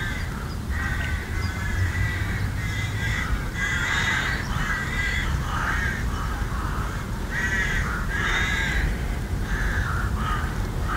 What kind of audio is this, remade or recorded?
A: remade